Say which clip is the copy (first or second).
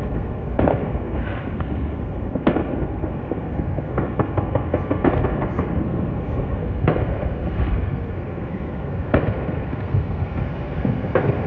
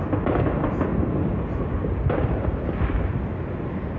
first